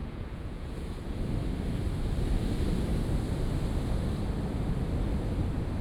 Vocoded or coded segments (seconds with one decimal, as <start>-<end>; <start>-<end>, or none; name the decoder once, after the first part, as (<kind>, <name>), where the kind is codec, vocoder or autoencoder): 0.0-1.2 (vocoder, Vocos)